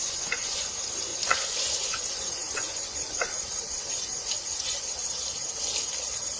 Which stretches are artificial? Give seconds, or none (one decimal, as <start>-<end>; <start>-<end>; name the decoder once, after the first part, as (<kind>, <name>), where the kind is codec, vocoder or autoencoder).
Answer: 0.0-0.7 (vocoder, Vocos); 1.1-4.9